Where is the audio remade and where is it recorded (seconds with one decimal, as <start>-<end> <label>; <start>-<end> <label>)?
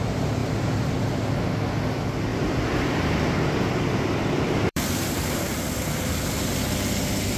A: 0.0-0.4 recorded; 0.4-1.0 remade; 1.0-2.3 recorded; 2.3-6.4 remade; 6.4-7.4 recorded